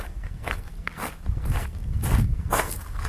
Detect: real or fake fake